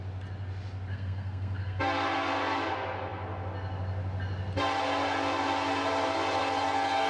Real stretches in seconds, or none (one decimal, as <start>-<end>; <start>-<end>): 0.0-0.9; 1.8-7.1